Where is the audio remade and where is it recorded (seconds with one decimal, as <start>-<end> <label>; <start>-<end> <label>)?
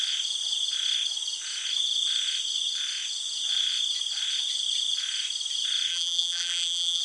0.0-5.9 recorded; 5.9-7.0 remade